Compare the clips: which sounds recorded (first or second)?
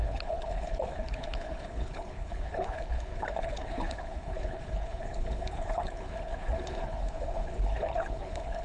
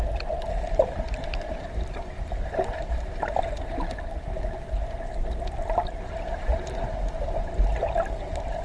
second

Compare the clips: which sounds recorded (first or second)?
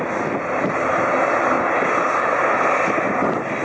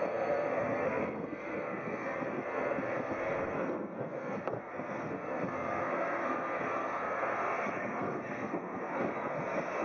first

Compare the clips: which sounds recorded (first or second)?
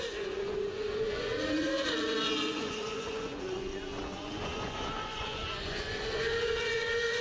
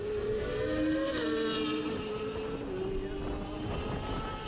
second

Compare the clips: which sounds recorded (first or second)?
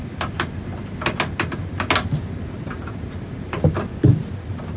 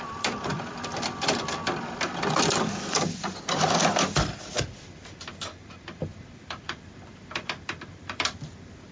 first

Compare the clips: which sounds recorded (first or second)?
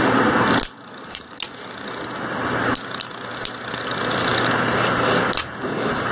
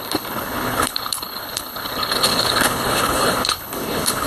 first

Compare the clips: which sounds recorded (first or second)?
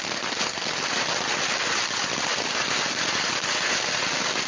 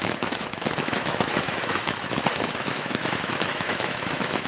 first